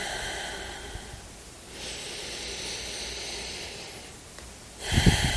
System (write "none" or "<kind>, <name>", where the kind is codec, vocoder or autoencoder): none